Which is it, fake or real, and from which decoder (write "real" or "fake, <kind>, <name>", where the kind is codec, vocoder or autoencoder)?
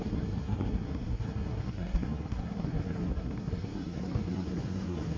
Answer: fake, codec, SNAC